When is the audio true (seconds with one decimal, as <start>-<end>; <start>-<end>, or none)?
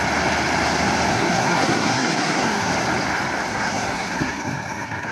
0.0-1.1; 2.7-3.5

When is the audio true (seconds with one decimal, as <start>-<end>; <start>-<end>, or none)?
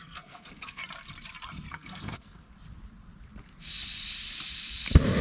0.8-1.7; 2.5-5.2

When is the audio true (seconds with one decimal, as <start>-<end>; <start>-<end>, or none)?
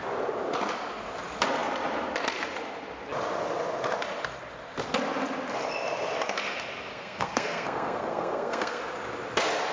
0.0-6.9; 8.8-9.7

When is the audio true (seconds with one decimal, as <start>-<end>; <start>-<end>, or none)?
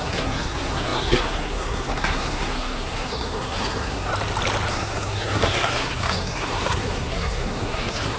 4.1-4.7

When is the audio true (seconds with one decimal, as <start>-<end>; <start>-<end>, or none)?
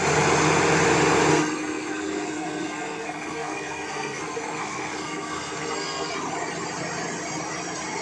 0.0-1.3; 6.1-8.0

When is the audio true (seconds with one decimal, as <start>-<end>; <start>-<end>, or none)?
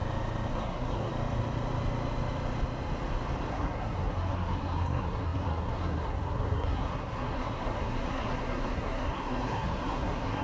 0.0-0.5; 1.1-3.5